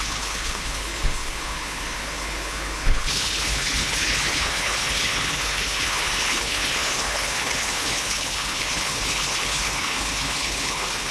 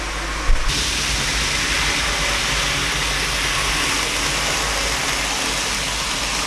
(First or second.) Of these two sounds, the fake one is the first